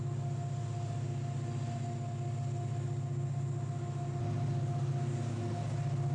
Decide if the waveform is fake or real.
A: real